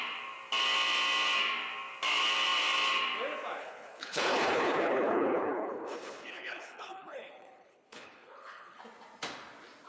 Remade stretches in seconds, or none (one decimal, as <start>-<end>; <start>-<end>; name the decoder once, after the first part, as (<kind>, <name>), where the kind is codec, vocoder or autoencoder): 3.6-8.8 (codec, HILCodec)